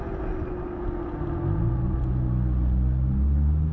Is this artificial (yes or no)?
no